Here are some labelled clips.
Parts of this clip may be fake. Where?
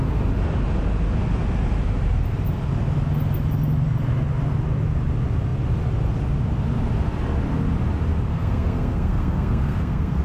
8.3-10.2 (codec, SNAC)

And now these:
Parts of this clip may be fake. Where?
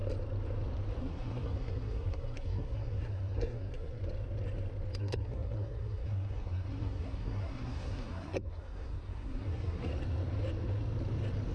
1.0-4.0 (codec, SNAC); 5.0-9.9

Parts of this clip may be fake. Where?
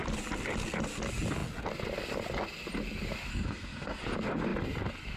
3.3-4.0 (codec, SNAC)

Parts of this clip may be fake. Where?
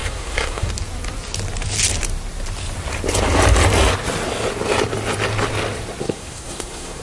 0.0-0.7 (codec, SNAC); 6.0-7.0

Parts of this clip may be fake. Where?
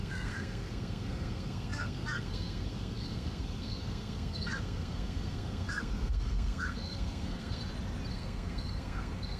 0.0-7.6 (codec, SNAC); 8.1-9.4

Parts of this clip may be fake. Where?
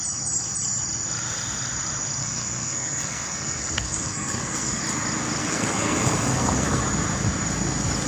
2.2-4.8 (codec, SNAC); 5.4-6.8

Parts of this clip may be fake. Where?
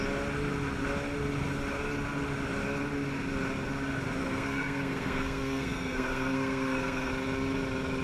4.2-7.1 (codec, SNAC)